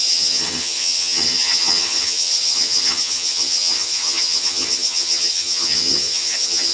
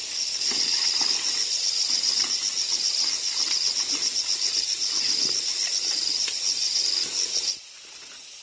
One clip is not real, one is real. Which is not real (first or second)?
first